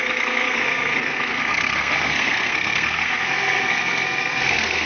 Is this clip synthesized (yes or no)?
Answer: yes